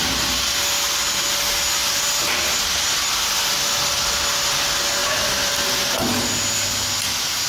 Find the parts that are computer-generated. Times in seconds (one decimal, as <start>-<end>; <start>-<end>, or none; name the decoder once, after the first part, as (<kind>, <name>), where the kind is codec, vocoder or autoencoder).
none